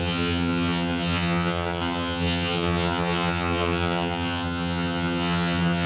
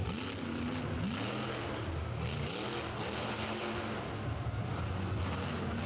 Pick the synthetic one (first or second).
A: first